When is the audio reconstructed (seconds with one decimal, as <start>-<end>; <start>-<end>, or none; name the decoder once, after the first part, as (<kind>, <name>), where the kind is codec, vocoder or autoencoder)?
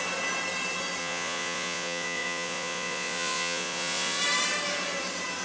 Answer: 1.0-4.2 (vocoder, Vocos)